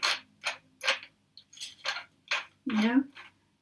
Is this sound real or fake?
real